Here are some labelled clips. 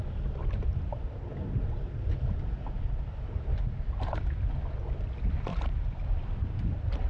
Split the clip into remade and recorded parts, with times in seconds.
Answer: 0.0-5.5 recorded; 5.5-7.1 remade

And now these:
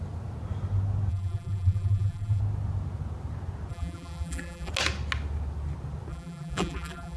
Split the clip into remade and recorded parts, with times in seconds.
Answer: 0.0-1.1 recorded; 1.1-2.4 remade; 2.4-3.7 recorded; 3.7-4.7 remade; 4.7-6.1 recorded; 6.1-7.2 remade

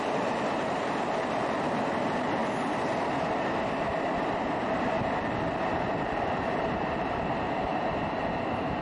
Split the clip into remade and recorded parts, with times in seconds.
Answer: 0.0-2.4 remade; 2.4-7.0 recorded; 7.0-7.7 remade; 7.7-8.8 recorded

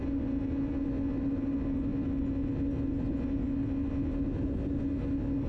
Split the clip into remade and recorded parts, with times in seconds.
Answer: 0.0-5.5 recorded

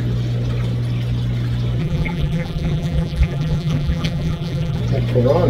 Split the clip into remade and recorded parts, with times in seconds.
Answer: 0.0-1.8 recorded; 1.8-4.8 remade; 4.8-5.5 recorded

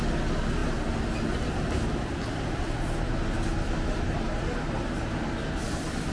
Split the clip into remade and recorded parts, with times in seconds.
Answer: 0.0-6.1 recorded